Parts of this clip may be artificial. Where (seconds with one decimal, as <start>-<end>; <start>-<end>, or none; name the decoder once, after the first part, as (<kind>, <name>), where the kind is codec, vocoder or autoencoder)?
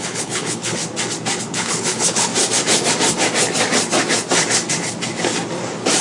0.0-0.8 (codec, HILCodec); 1.4-2.3